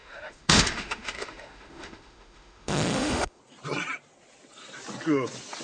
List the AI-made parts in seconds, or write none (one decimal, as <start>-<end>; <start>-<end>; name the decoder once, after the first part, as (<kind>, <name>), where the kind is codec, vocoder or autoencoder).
0.0-3.4 (autoencoder, DAC-VAE)